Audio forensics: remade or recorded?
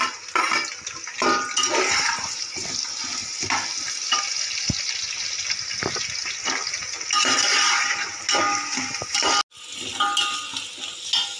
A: recorded